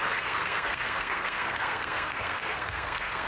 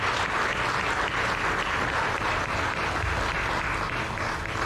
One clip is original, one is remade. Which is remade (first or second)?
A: first